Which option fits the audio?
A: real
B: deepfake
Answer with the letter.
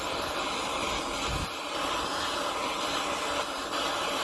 A